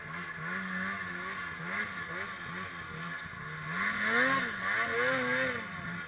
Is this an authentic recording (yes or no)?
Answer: yes